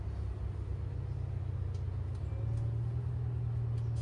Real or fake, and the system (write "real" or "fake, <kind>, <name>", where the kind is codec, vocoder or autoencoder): real